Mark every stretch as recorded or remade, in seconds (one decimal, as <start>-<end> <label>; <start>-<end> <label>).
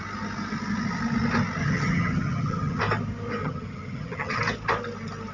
0.0-1.6 recorded; 1.6-2.8 remade; 2.8-3.4 recorded; 3.4-4.4 remade; 4.4-5.3 recorded